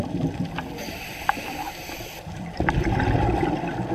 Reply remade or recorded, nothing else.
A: remade